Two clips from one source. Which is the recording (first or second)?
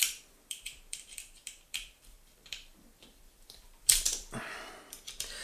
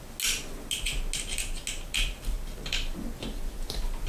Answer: second